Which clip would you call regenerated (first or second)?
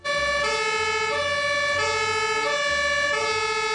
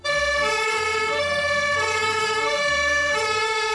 second